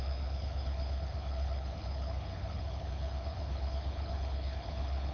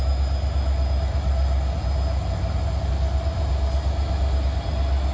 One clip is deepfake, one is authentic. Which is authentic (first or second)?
second